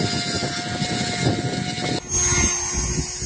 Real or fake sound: real